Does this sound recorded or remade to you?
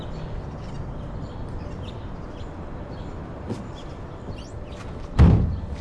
remade